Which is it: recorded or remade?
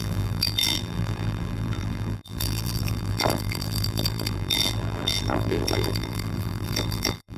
remade